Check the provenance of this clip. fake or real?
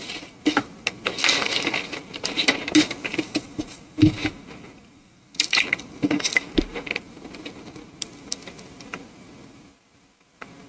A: real